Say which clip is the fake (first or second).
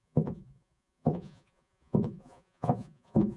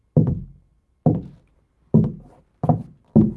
first